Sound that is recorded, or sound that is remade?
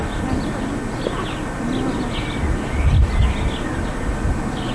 recorded